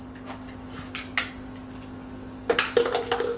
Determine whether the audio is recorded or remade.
recorded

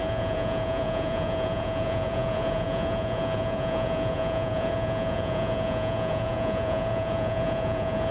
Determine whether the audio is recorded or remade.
remade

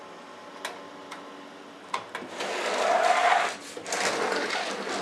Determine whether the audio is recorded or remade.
recorded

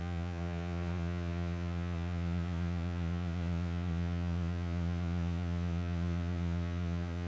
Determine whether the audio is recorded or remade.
remade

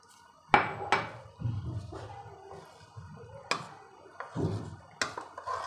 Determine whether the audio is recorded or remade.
recorded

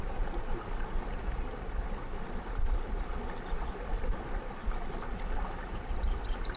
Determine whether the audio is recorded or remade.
recorded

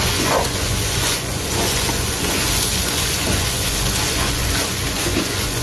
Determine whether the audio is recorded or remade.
remade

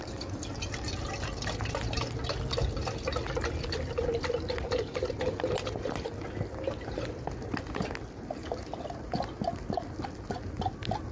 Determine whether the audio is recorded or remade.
recorded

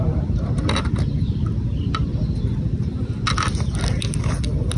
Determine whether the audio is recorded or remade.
recorded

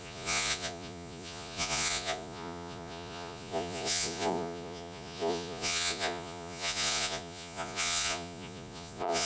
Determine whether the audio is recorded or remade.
remade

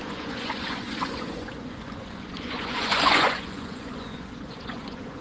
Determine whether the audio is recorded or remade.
remade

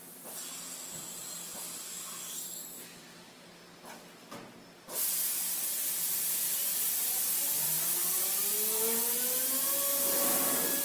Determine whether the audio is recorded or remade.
recorded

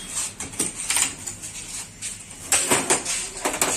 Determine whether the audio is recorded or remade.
recorded